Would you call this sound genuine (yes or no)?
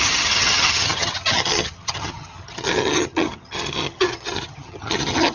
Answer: no